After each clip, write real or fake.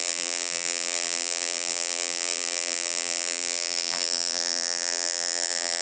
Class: fake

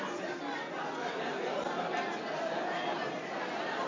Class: real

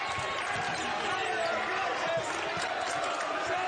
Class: real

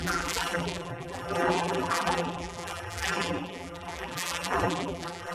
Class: fake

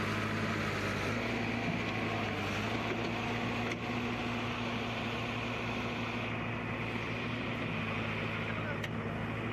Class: real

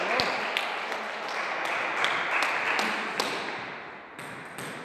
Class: real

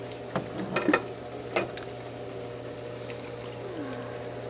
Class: real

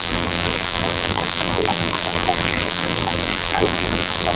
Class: fake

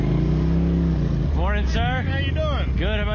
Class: real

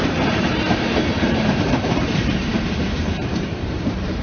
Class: fake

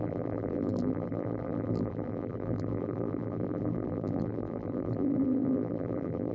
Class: fake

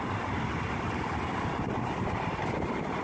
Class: real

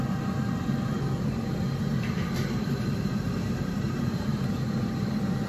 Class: fake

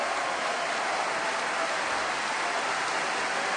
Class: real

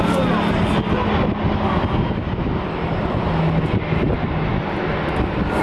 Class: real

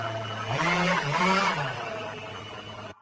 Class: fake